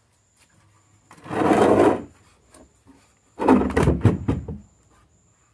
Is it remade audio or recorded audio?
recorded